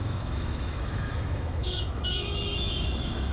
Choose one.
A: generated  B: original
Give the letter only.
A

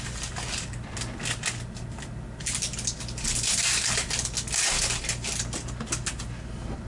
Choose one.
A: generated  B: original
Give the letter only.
B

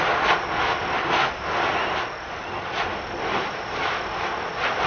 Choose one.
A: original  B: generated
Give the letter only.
A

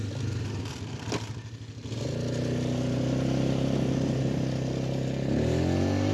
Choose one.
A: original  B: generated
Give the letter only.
A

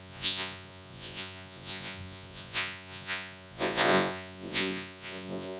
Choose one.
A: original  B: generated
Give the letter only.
B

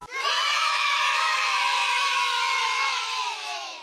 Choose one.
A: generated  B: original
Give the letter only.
A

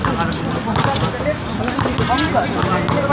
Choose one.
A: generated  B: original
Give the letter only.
B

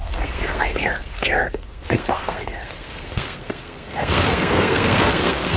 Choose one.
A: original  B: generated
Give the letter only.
B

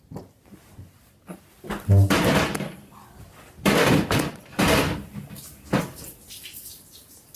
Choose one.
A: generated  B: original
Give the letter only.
B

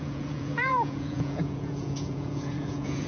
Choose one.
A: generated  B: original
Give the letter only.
A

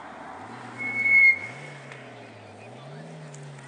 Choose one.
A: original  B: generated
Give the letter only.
A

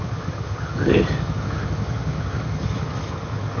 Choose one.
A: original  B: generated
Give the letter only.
B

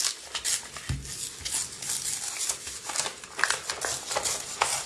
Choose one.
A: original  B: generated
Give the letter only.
A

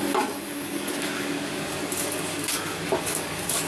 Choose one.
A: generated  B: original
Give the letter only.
A